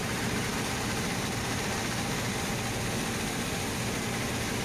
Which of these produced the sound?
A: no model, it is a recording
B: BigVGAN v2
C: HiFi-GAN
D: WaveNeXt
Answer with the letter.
A